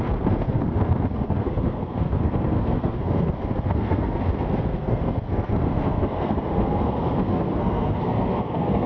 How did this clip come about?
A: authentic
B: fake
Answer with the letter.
B